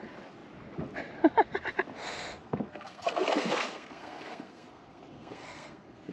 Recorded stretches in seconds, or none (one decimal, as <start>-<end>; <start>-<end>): 0.0-2.0